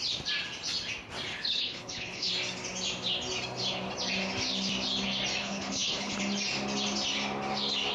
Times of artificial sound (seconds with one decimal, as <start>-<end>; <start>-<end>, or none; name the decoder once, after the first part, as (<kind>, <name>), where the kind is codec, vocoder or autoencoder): 1.3-2.3 (codec, HILCodec); 5.4-6.2